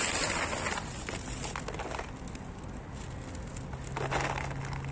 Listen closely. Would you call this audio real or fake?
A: real